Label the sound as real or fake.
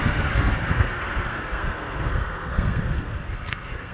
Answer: fake